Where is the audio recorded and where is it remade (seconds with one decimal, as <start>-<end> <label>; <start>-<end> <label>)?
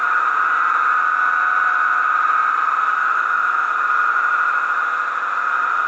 0.0-3.0 recorded; 3.0-3.7 remade; 3.7-5.9 recorded